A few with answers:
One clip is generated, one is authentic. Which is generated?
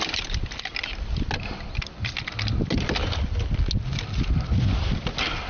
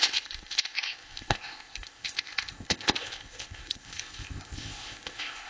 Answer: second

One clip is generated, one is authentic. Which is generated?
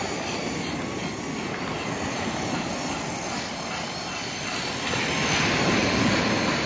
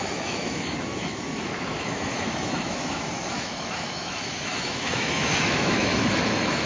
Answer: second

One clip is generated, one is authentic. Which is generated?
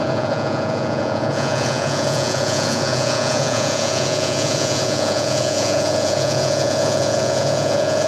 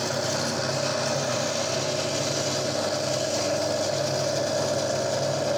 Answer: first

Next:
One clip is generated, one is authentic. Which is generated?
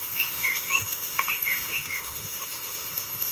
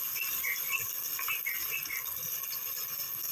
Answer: first